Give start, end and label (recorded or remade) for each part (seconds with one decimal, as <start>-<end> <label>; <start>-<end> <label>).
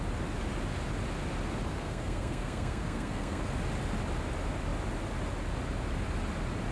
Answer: 0.0-1.7 recorded; 1.7-3.4 remade; 3.4-6.7 recorded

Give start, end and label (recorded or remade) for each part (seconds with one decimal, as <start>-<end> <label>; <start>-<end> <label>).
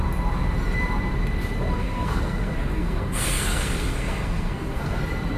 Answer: 0.0-1.8 recorded; 1.8-5.0 remade; 5.0-5.4 recorded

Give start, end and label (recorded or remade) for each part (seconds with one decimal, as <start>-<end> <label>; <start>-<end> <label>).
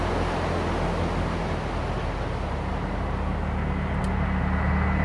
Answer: 0.0-5.0 recorded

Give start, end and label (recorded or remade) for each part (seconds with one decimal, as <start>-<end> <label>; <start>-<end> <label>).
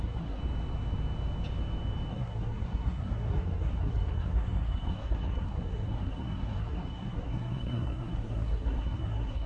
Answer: 0.0-0.4 remade; 0.4-2.1 recorded; 2.1-9.5 remade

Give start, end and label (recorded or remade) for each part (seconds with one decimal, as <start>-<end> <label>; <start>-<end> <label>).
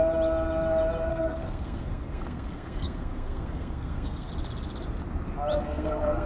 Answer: 0.0-1.1 recorded; 1.1-4.3 remade; 4.3-5.5 recorded; 5.5-6.3 remade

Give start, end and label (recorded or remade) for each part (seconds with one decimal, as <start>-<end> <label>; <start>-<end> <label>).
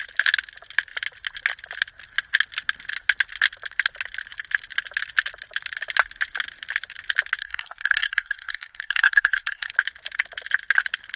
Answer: 0.0-7.4 recorded; 7.4-9.7 remade; 9.7-11.2 recorded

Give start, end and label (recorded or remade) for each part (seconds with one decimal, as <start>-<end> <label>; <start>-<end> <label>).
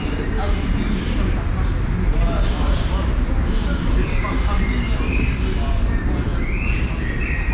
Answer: 0.0-7.5 recorded